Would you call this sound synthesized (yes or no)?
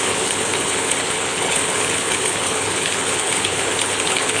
yes